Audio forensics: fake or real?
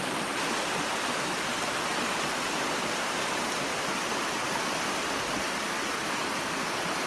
real